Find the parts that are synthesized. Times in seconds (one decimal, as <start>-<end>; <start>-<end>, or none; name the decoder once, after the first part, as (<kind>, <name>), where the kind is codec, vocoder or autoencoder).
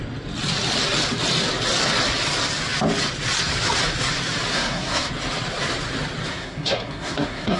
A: 4.5-5.1 (codec, SNAC); 6.3-7.6